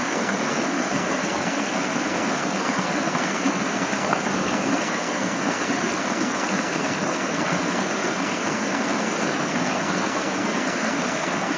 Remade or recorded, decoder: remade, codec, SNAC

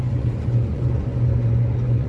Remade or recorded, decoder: remade, vocoder, Vocos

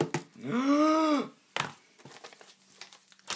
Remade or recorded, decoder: recorded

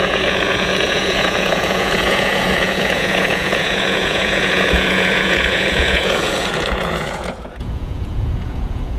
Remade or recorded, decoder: remade, vocoder, Vocos